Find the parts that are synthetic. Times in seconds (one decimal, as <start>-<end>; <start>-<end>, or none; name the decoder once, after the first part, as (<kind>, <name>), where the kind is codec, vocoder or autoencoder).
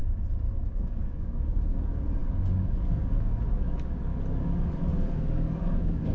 0.5-4.1 (codec, DAC); 4.7-6.1